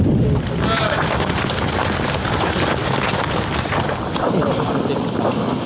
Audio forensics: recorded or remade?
recorded